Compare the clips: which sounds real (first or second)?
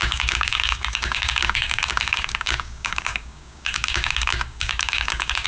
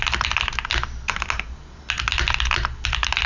second